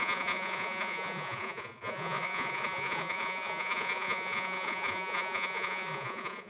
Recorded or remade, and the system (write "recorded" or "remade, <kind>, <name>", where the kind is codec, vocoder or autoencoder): remade, vocoder, Vocos